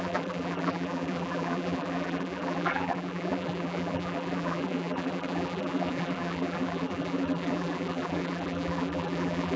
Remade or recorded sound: remade